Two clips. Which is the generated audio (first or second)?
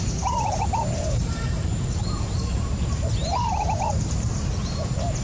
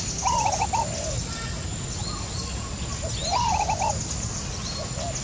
first